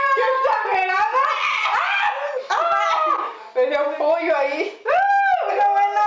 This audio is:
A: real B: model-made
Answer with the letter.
A